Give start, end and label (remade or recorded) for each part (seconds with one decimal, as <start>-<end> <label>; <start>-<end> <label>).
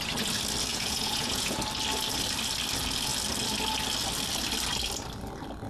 0.0-0.7 recorded; 0.7-1.6 remade; 1.6-5.7 recorded